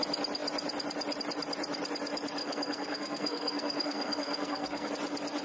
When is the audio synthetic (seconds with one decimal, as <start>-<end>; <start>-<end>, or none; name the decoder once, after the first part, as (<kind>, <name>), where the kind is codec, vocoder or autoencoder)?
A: 2.4-4.9 (codec, SNAC)